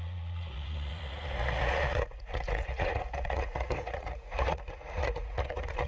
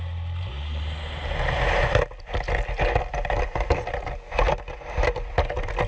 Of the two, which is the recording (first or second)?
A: second